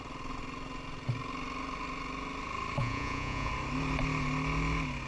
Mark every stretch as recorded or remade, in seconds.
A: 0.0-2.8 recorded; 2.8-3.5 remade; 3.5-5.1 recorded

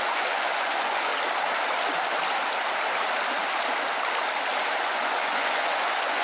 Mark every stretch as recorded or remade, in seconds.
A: 0.0-1.1 remade; 1.1-4.8 recorded; 4.8-6.2 remade

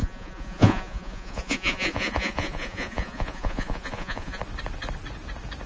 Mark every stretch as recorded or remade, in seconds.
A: 0.0-4.4 remade; 4.4-5.7 recorded

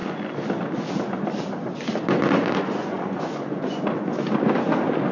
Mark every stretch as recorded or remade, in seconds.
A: 0.0-2.8 recorded; 2.8-3.8 remade; 3.8-5.1 recorded

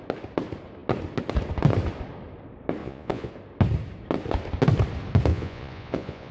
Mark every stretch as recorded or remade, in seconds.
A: 0.0-2.8 recorded; 2.8-3.3 remade; 3.3-5.3 recorded; 5.3-6.3 remade